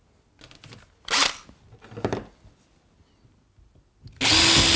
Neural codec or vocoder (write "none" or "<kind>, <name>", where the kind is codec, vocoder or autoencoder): none